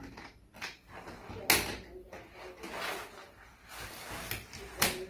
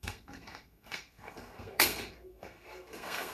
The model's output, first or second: second